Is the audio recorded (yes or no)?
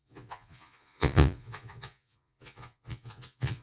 no